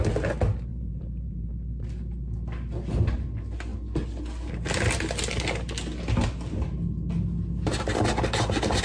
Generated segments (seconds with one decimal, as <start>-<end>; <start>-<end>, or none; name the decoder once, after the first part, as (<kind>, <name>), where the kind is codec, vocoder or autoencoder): 0.7-1.5 (vocoder, BigVGAN v2)